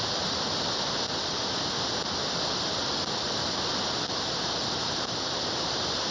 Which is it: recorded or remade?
recorded